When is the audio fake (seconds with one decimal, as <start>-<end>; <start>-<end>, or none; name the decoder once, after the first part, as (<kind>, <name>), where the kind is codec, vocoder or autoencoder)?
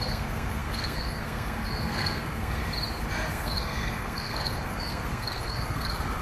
0.0-2.6 (codec, SNAC); 3.3-6.2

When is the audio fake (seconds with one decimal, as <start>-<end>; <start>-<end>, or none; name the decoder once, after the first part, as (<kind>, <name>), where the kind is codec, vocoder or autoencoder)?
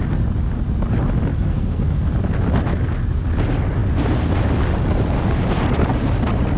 1.3-2.1 (codec, SNAC)